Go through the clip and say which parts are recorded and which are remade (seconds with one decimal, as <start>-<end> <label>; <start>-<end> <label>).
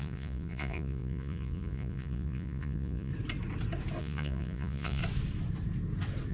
0.0-3.1 remade; 3.1-4.0 recorded; 4.0-5.0 remade; 5.0-6.3 recorded